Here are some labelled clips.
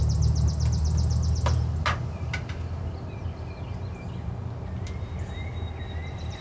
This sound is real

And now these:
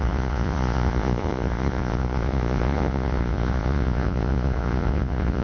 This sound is fake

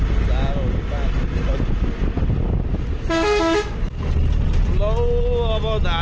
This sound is real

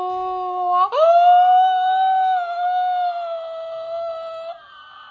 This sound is real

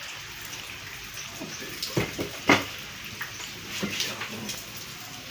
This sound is real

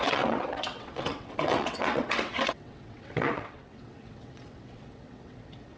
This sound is fake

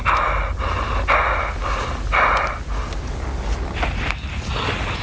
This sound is real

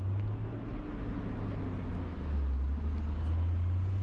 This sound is real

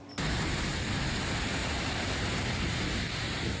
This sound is real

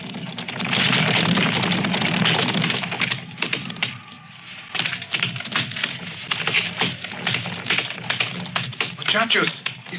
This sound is real